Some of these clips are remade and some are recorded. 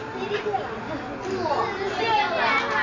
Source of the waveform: recorded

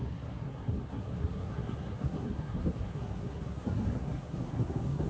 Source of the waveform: remade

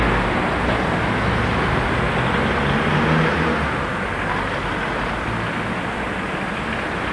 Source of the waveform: recorded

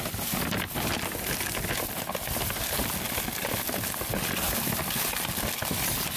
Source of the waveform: recorded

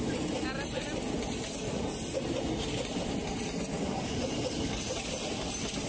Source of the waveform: recorded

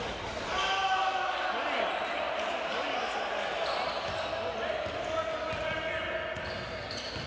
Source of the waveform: recorded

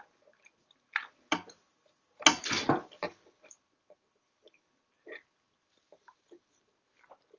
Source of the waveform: recorded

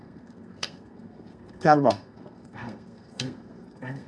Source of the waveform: remade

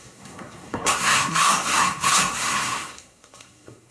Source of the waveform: remade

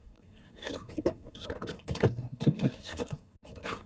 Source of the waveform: remade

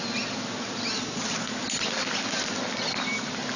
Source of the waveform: recorded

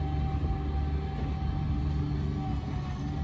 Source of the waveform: recorded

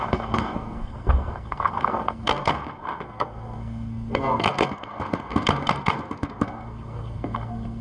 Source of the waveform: remade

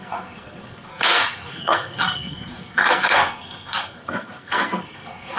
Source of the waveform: remade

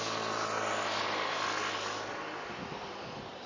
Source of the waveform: recorded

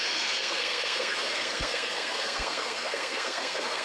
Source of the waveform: remade